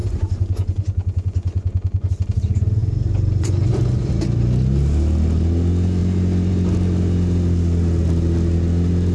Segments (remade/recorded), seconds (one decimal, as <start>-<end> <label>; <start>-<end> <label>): 0.0-2.1 remade; 2.1-2.8 recorded; 2.8-4.1 remade; 4.1-9.1 recorded